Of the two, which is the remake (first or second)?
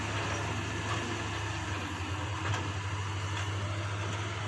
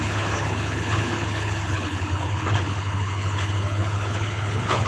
second